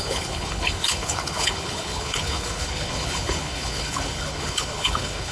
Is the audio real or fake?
fake